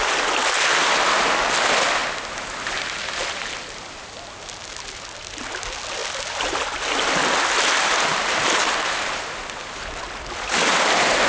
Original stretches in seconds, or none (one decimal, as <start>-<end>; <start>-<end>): 0.0-11.3